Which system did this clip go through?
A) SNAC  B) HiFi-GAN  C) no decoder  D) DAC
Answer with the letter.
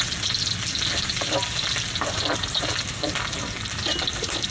C